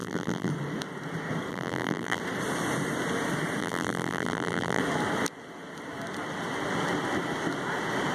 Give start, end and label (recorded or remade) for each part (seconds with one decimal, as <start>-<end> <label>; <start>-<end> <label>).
0.0-0.5 remade; 0.5-1.5 recorded; 1.5-2.2 remade; 2.2-3.6 recorded; 3.6-4.8 remade; 4.8-8.1 recorded